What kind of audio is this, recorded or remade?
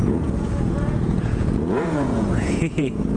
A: remade